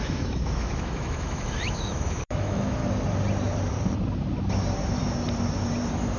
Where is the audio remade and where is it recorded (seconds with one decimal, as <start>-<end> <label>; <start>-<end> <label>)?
0.0-2.8 remade; 2.8-6.2 recorded